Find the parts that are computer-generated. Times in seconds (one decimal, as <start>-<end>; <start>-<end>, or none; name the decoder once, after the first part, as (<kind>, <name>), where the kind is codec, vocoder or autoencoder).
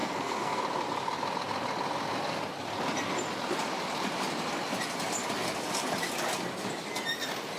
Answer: 0.0-0.6 (codec, SNAC)